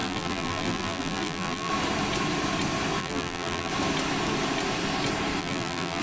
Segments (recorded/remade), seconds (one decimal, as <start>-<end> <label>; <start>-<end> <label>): 0.0-1.7 remade; 1.7-3.0 recorded; 3.0-3.7 remade; 3.7-5.4 recorded; 5.4-6.0 remade